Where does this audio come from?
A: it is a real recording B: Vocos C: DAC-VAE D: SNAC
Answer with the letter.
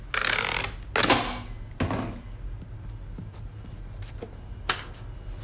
A